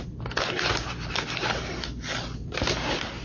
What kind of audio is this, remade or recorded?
recorded